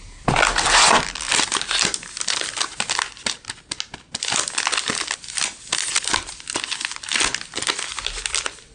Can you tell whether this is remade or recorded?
recorded